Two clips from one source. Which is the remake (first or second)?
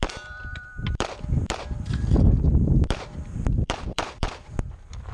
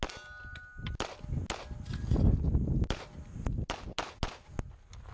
first